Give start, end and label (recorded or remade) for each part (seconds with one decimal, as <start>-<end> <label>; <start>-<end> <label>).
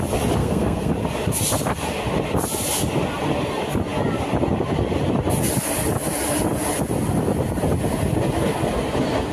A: 0.0-0.4 recorded; 0.4-0.9 remade; 0.9-9.3 recorded